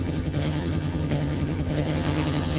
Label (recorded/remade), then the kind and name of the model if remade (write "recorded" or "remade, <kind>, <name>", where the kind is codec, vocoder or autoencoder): remade, vocoder, HiFi-GAN